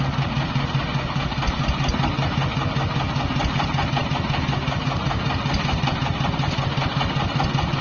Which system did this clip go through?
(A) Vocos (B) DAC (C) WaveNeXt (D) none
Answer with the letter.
D